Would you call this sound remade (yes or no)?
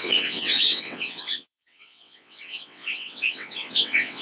yes